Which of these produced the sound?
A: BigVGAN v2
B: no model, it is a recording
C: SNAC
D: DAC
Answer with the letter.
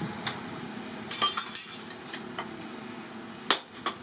B